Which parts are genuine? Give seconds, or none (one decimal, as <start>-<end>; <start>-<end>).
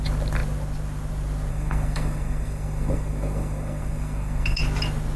0.0-1.5; 4.6-5.2